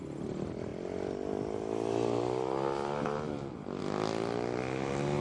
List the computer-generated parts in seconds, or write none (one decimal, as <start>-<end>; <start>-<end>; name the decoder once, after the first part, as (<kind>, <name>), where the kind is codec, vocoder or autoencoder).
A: none